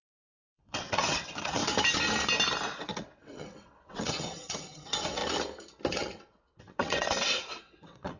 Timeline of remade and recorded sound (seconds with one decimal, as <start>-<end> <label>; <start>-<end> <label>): 0.0-1.6 remade; 1.6-2.7 recorded; 2.7-5.2 remade; 5.2-5.9 recorded; 5.9-8.2 remade